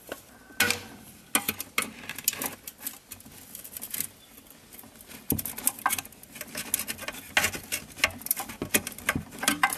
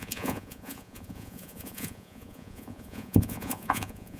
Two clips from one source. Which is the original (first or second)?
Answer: first